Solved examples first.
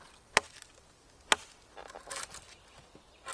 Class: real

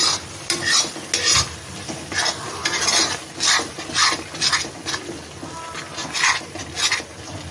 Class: real